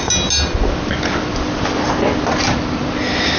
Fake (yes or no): no